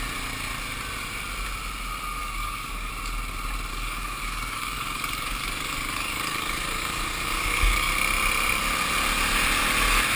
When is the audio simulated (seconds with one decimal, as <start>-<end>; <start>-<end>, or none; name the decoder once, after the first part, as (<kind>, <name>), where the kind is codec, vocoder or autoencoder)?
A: 2.2-2.9 (codec, DAC); 3.7-7.9